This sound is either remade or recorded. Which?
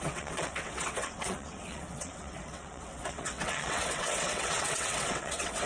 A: remade